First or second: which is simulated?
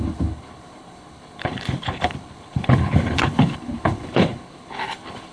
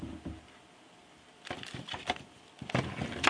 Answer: first